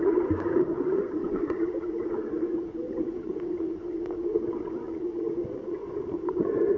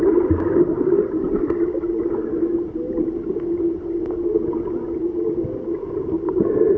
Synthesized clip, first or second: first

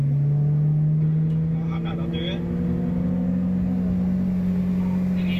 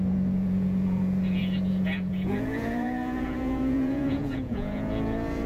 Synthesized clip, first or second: second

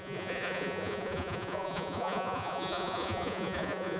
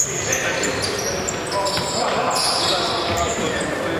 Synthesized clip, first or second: first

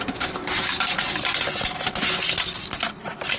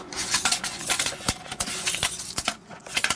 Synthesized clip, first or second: second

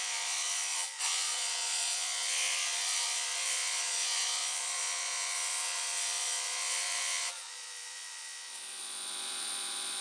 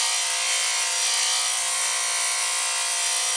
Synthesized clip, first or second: first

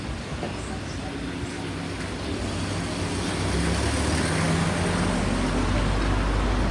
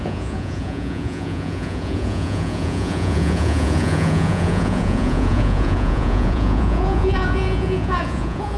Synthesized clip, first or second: second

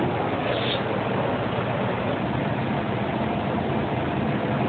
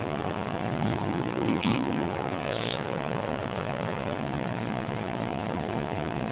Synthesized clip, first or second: second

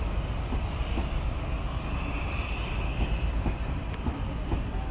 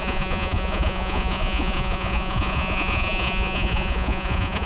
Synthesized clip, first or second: second